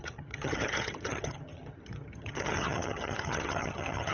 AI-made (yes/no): yes